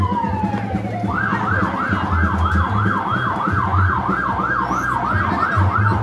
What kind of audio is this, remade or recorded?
recorded